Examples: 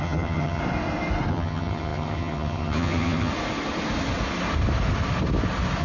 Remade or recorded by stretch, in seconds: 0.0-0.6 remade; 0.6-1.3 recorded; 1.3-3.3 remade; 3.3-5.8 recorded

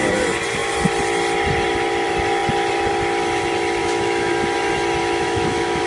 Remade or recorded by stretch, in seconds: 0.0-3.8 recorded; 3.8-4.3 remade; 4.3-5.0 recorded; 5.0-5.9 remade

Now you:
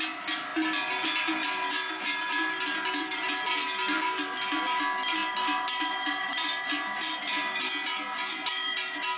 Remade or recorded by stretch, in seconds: 0.0-9.2 recorded